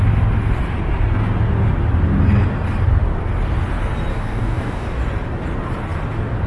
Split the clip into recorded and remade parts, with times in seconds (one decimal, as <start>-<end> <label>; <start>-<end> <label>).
0.0-4.1 recorded; 4.1-5.0 remade; 5.0-6.5 recorded